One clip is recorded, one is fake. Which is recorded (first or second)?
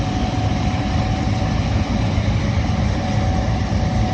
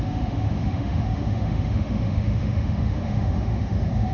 first